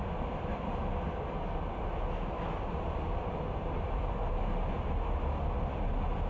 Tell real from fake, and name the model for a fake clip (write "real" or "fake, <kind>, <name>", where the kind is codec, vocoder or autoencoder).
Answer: real